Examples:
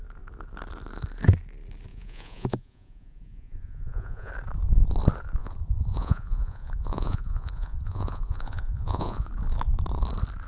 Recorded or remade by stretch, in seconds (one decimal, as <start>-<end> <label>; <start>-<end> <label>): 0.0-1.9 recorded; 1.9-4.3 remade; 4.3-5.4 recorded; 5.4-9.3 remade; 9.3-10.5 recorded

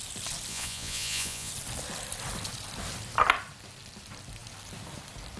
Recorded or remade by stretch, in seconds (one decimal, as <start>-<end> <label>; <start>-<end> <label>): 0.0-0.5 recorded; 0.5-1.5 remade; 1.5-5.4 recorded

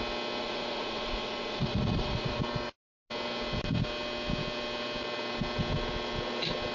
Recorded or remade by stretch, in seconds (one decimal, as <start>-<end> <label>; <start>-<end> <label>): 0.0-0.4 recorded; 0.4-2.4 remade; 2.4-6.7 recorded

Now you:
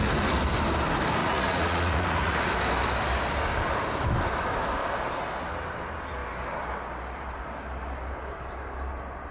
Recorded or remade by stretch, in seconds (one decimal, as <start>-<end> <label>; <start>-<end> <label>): 0.0-1.2 recorded; 1.2-2.5 remade; 2.5-9.3 recorded